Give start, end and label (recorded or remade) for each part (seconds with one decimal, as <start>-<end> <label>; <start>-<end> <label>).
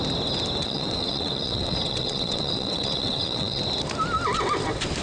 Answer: 0.0-0.6 recorded; 0.6-3.6 remade; 3.6-5.0 recorded